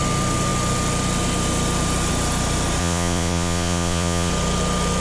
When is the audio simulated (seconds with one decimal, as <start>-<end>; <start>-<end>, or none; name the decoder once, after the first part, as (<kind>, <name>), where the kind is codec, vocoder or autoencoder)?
2.8-4.3 (vocoder, Vocos)